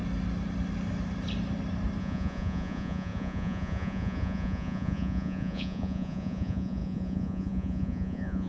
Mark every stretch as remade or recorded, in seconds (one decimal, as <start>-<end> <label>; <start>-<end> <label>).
0.0-2.0 recorded; 2.0-8.5 remade